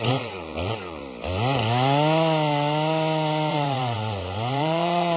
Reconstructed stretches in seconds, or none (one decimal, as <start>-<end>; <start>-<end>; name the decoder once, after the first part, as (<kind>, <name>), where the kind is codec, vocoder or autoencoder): 0.0-1.0 (vocoder, Vocos); 3.5-5.2